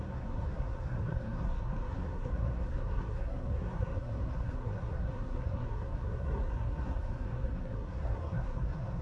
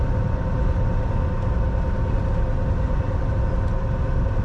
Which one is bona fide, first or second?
second